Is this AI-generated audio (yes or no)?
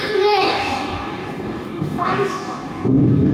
yes